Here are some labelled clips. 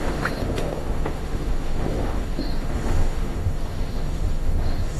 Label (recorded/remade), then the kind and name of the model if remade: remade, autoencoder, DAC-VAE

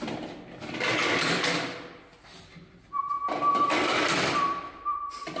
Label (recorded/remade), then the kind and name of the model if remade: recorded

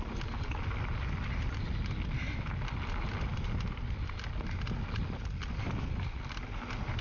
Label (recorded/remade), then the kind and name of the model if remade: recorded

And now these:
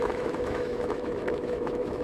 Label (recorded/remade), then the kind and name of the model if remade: remade, autoencoder, DAC-VAE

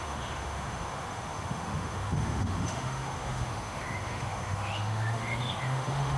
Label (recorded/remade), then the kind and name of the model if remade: remade, autoencoder, DAC-VAE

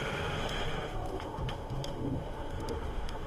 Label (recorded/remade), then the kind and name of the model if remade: remade, autoencoder, DAC-VAE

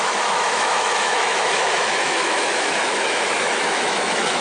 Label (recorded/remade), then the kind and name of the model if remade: remade, autoencoder, DAC-VAE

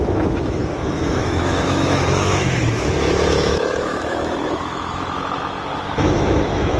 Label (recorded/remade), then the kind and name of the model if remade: remade, autoencoder, DAC-VAE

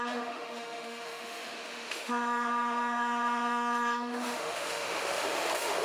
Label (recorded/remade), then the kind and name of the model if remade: remade, autoencoder, DAC-VAE